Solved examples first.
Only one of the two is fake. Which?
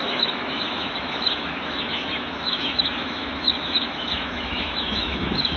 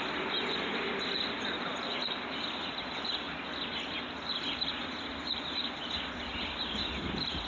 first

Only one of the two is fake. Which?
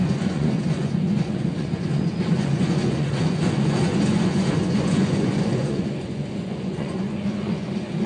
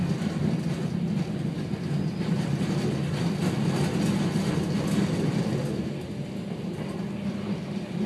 first